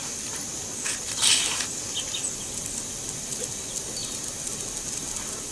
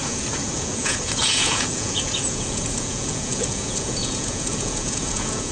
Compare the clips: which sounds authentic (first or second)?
first